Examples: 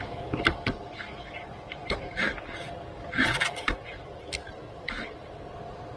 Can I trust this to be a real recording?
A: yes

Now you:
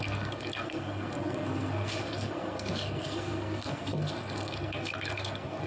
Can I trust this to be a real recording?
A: no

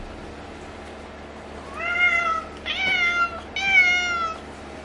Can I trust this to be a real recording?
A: yes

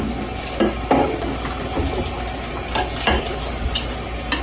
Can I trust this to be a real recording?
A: yes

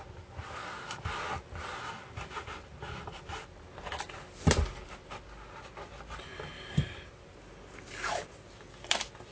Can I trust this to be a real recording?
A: yes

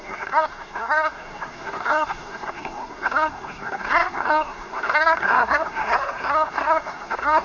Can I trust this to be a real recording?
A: no